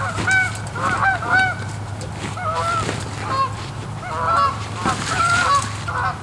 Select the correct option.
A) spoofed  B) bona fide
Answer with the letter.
B